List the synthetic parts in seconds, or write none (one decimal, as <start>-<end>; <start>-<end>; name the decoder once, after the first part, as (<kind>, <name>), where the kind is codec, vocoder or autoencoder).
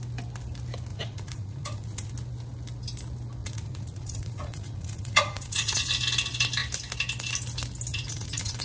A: 0.9-2.1 (vocoder, Vocos); 3.4-5.9; 7.9-8.6